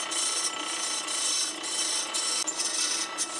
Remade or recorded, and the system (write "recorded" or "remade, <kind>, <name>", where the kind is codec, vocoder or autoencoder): recorded